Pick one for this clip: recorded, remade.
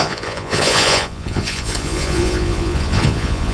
remade